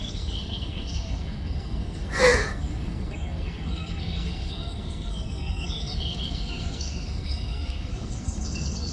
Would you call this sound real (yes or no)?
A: no